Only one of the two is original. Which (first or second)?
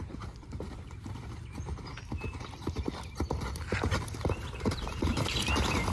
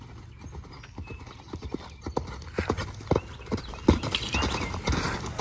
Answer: second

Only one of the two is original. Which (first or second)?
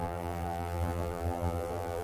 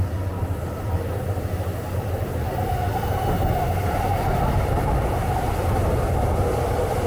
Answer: second